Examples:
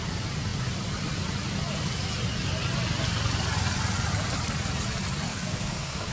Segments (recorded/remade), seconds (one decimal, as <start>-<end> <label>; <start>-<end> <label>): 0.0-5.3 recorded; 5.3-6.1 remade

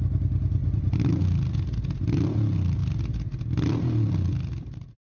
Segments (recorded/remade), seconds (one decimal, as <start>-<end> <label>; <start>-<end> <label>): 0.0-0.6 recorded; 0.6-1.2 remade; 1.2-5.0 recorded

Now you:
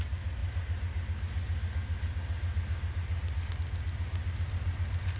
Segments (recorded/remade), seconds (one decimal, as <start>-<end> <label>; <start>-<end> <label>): 0.0-5.2 recorded

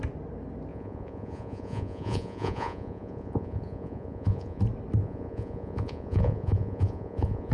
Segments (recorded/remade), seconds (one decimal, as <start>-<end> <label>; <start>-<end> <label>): 0.0-0.7 recorded; 0.7-4.6 remade; 4.6-5.0 recorded; 5.0-7.5 remade